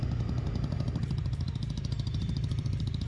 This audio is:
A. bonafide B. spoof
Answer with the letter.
B